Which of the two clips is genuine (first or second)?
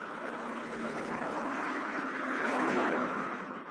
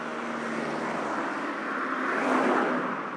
second